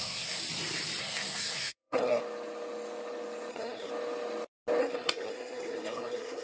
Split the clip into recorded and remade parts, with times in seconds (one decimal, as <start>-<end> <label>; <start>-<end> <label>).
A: 0.0-0.4 remade; 0.4-1.0 recorded; 1.0-2.2 remade; 2.2-3.5 recorded; 3.5-3.9 remade; 3.9-4.8 recorded; 4.8-6.4 remade